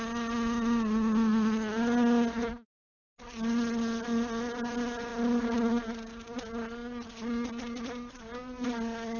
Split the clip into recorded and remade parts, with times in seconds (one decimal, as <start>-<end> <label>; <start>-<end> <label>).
0.0-9.2 recorded